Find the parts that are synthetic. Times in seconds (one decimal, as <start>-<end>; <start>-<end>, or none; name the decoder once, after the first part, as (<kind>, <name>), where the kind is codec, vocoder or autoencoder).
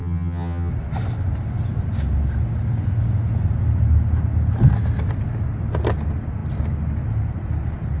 0.0-0.7 (vocoder, HiFi-GAN)